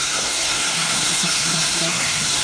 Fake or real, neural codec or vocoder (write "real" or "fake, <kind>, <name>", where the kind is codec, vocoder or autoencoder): fake, codec, SNAC